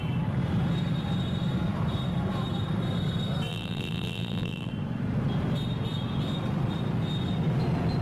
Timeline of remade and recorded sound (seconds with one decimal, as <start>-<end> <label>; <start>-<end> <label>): 0.0-3.5 recorded; 3.5-4.7 remade; 4.7-8.0 recorded